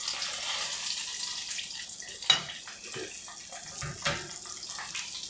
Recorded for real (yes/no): yes